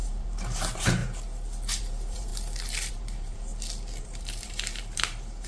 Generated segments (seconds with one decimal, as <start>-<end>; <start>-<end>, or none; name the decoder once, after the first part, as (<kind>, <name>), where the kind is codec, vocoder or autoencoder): 0.0-1.0 (vocoder, BigVGAN v2); 1.7-2.3; 2.9-3.5; 4.0-5.5